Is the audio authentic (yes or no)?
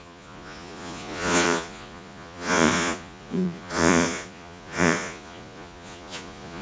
no